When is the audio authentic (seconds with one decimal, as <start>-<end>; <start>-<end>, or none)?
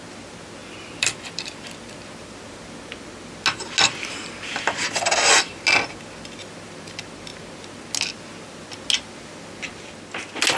0.0-0.6; 1.9-10.6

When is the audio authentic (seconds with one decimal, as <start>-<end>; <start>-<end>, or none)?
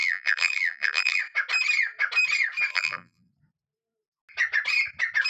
1.2-2.7; 3.3-5.3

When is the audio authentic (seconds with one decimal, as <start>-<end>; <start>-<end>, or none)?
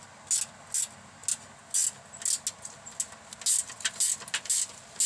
0.0-5.1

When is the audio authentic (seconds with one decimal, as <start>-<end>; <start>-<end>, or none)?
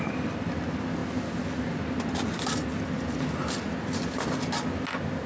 0.0-5.3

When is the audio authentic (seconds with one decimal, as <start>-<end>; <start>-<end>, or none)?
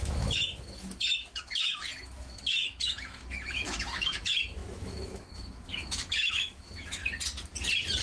7.0-8.0